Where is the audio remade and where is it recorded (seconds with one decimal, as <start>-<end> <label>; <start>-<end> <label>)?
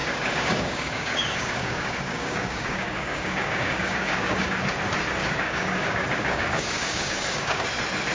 0.0-4.6 remade; 4.6-5.2 recorded; 5.2-7.6 remade; 7.6-8.1 recorded